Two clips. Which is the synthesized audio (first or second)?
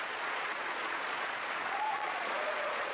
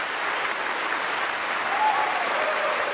first